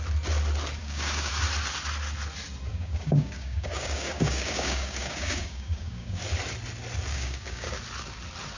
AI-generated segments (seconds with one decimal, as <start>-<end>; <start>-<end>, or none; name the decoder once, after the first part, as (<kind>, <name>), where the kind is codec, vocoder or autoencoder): 0.8-1.3 (codec, DAC); 2.7-6.2; 7.1-7.8